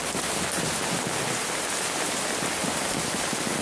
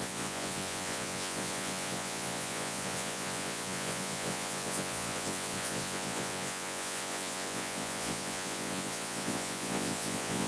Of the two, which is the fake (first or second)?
second